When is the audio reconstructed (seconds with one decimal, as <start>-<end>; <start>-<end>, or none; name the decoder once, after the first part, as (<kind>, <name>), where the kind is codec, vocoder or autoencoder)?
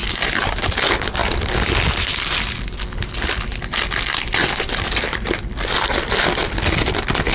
0.0-0.7 (vocoder, BigVGAN v2); 1.2-2.6; 4.4-6.1